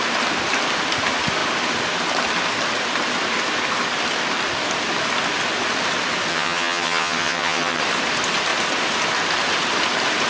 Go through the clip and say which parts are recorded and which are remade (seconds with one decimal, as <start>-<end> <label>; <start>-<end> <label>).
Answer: 0.0-6.3 recorded; 6.3-7.8 remade; 7.8-10.3 recorded